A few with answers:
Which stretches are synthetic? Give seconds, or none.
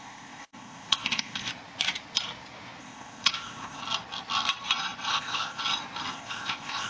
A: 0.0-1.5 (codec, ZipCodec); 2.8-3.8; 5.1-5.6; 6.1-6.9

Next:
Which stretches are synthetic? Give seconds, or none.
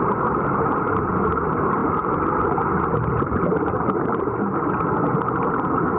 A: 3.1-4.2 (vocoder, BigVGAN v2)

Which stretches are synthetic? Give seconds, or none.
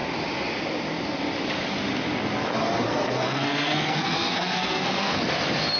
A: 2.9-5.2 (codec, SNAC)